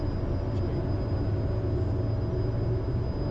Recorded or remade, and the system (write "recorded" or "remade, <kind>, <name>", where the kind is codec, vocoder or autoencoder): recorded